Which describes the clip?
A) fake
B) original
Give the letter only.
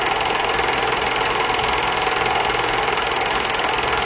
B